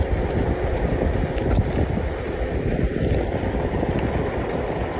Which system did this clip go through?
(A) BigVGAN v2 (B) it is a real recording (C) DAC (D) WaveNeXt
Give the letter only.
A